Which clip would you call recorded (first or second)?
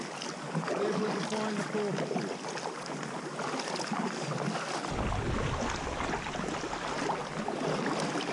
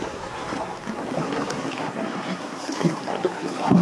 first